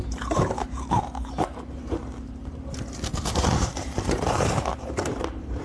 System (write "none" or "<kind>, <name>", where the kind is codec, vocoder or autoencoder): vocoder, BigVGAN v2